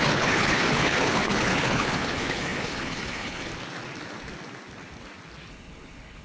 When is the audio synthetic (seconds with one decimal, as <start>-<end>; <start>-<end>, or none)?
0.0-3.5; 5.5-6.2